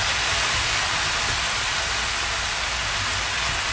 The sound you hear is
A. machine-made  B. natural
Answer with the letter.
B